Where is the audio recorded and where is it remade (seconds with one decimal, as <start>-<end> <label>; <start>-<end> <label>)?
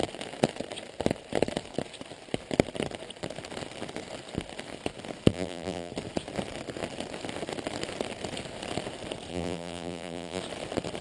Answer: 0.0-5.3 recorded; 5.3-5.9 remade; 5.9-9.3 recorded; 9.3-10.4 remade; 10.4-11.0 recorded